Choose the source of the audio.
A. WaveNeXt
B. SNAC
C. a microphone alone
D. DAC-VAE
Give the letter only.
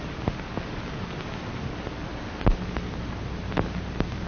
C